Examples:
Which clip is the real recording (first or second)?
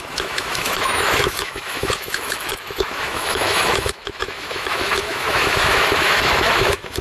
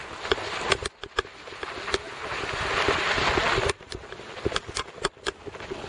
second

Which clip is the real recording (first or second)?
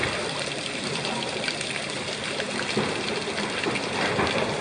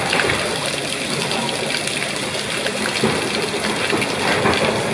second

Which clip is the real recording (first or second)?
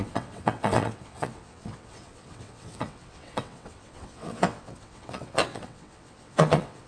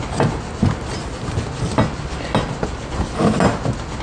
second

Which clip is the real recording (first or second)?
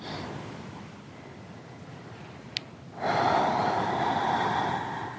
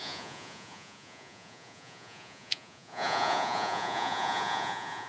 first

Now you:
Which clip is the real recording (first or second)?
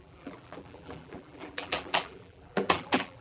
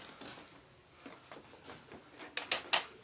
second